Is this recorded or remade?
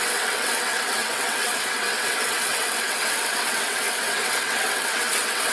remade